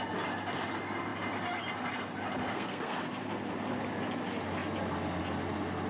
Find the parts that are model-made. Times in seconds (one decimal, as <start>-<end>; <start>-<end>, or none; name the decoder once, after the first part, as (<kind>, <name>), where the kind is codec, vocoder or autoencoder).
2.5-3.0 (codec, SNAC)